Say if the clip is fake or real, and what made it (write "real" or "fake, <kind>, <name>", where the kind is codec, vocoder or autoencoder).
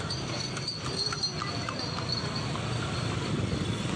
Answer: real